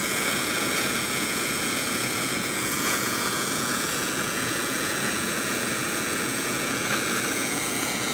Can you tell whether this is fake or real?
fake